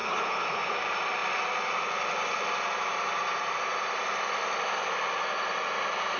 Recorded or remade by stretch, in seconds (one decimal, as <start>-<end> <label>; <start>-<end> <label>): 0.0-0.7 remade; 0.7-6.2 recorded